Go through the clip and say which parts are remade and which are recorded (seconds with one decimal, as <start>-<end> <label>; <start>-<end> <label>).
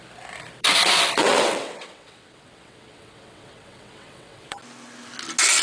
0.0-1.2 recorded; 1.2-4.6 remade; 4.6-5.6 recorded